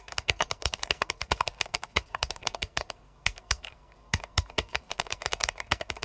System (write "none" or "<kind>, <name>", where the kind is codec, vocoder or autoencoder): codec, SNAC